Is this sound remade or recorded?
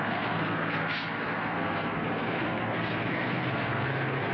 remade